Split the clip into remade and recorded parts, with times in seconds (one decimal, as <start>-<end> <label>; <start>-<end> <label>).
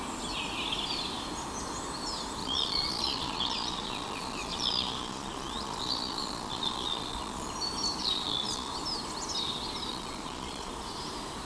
0.0-2.4 recorded; 2.4-7.5 remade; 7.5-8.0 recorded; 8.0-8.7 remade; 8.7-9.9 recorded; 9.9-10.7 remade; 10.7-11.5 recorded